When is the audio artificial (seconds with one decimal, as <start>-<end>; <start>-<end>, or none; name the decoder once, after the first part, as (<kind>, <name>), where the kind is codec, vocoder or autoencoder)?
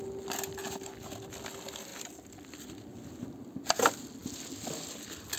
none